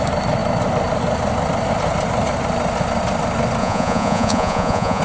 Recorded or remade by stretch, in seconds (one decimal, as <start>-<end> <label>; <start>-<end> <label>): 0.0-3.6 recorded; 3.6-5.0 remade